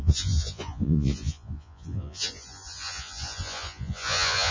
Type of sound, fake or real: fake